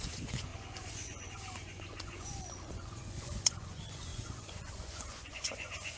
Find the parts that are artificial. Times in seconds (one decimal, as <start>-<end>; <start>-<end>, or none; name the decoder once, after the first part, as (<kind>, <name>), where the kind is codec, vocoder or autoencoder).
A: 0.0-6.0 (vocoder, Vocos)